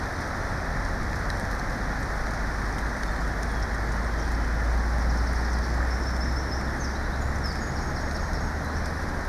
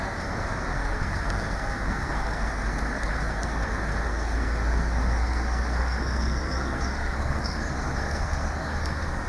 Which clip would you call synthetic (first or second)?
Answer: second